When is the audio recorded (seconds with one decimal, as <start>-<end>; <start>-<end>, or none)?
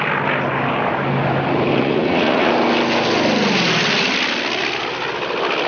0.0-1.7; 2.5-5.7